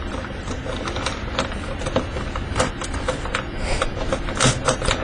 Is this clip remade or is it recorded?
recorded